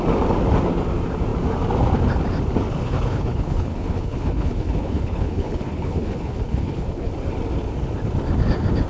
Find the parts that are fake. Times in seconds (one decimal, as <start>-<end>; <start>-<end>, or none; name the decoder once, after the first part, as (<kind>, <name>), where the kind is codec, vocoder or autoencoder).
2.8-7.1 (codec, HILCodec)